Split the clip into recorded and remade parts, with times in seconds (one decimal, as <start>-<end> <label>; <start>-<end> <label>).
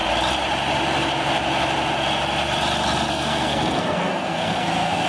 0.0-3.1 recorded; 3.1-5.1 remade